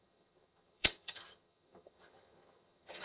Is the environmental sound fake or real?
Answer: fake